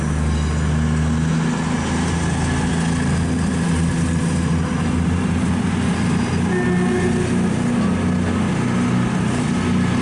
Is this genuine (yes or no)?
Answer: yes